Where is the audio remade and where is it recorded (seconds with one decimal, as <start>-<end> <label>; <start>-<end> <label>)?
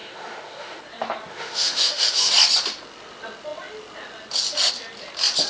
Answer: 0.0-0.8 remade; 0.8-1.3 recorded; 1.3-2.3 remade; 2.3-5.5 recorded